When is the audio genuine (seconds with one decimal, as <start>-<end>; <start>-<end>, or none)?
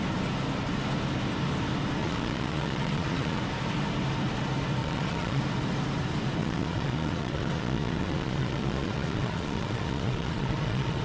0.0-2.0; 3.4-4.8; 5.4-6.4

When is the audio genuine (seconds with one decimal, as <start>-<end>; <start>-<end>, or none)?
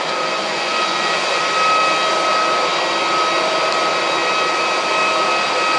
1.4-5.8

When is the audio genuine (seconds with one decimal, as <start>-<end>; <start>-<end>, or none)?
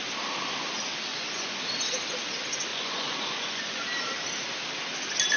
0.0-1.1; 1.6-2.7; 3.8-5.4